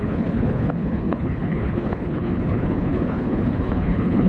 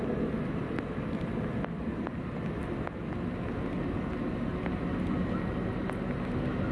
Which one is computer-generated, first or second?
first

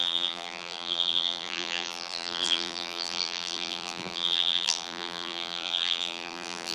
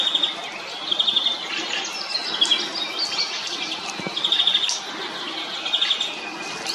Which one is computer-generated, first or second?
first